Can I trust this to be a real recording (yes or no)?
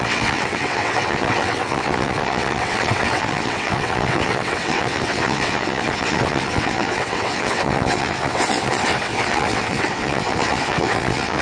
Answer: no